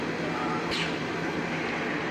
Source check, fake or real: real